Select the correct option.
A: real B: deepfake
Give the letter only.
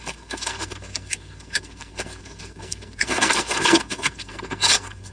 B